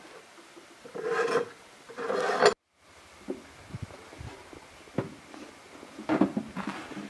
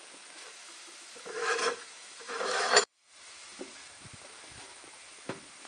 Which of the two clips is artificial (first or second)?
second